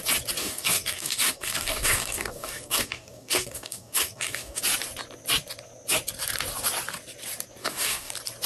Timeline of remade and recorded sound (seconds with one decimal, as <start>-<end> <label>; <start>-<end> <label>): 0.0-0.4 recorded; 0.4-4.6 remade; 4.6-7.6 recorded; 7.6-8.1 remade; 8.1-8.5 recorded